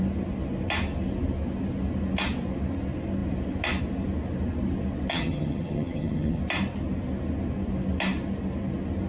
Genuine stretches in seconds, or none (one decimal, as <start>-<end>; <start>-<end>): 0.0-5.1; 6.4-9.1